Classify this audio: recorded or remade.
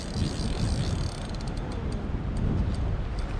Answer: recorded